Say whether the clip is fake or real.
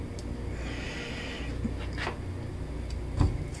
real